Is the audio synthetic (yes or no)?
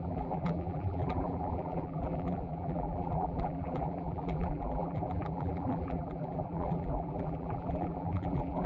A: yes